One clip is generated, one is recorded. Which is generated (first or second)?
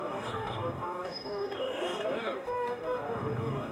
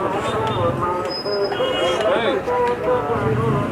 first